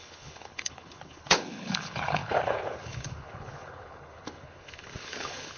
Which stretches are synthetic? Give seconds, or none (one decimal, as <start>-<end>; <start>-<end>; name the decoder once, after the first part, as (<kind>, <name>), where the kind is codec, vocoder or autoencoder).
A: 0.0-5.6 (codec, HILCodec)